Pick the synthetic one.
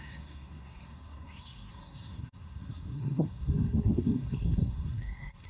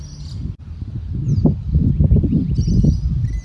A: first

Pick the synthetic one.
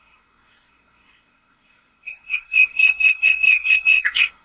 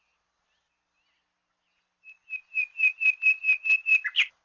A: first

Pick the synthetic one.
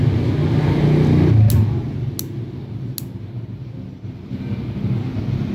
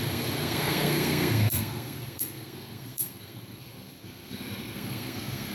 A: second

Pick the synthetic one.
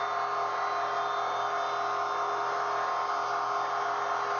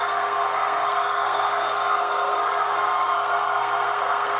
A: second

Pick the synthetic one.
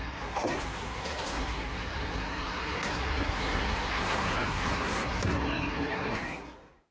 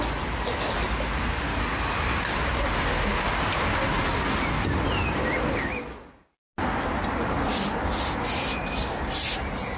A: first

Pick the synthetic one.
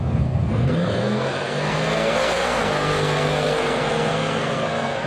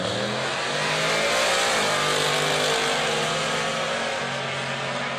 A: first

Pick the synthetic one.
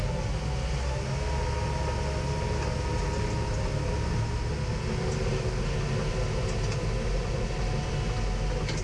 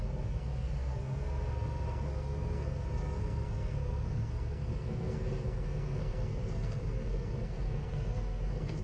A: second